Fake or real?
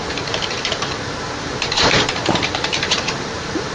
fake